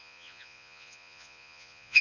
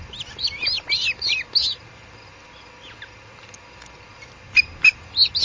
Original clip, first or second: second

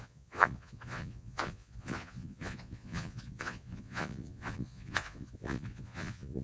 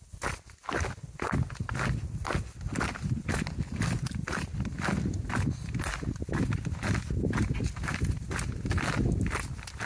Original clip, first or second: second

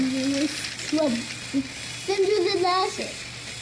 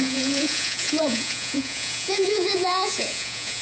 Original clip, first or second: first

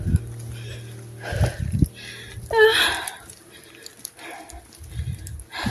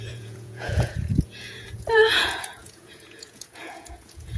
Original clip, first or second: first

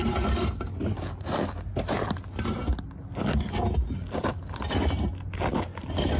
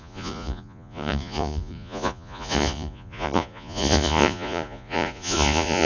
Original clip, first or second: first